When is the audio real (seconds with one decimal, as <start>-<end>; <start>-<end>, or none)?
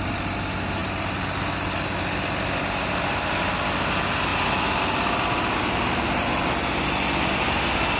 0.0-8.0